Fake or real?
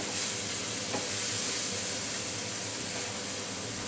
real